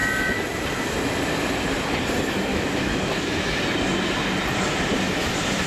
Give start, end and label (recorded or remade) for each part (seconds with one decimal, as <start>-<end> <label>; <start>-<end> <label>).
0.0-2.5 recorded; 2.5-3.6 remade; 3.6-5.7 recorded